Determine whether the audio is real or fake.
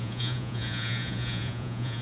fake